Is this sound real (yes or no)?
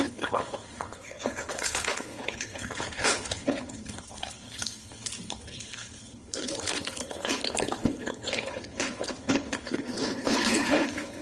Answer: no